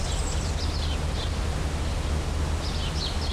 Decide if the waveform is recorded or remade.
recorded